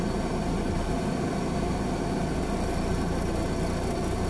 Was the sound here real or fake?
real